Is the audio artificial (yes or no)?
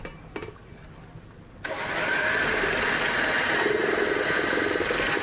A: no